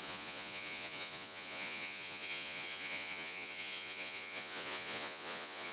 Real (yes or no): no